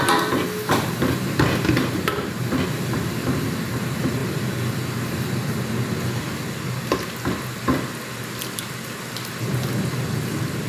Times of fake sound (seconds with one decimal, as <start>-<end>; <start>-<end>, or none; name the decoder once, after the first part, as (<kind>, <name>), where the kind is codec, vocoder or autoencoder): none